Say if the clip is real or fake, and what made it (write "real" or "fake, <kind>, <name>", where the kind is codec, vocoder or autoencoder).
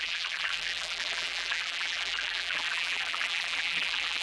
fake, vocoder, BigVGAN v2